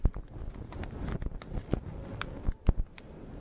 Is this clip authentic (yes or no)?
yes